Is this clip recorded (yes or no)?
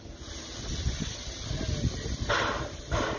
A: yes